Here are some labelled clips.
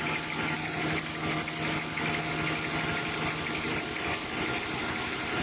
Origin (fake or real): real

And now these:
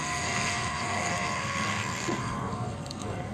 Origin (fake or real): fake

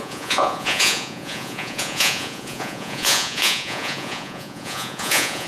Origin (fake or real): fake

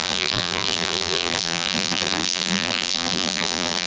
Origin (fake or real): fake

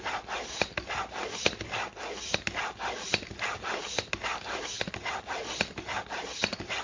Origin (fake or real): real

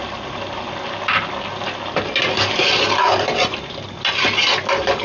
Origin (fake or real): real